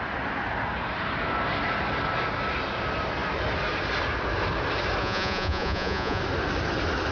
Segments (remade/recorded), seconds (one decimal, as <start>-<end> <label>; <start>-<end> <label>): 0.0-5.0 recorded; 5.0-6.2 remade; 6.2-7.1 recorded